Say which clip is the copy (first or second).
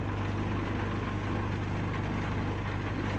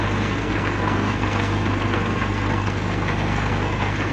second